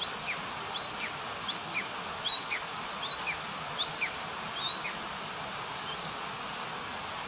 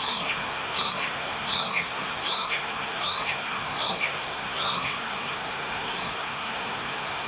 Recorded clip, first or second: first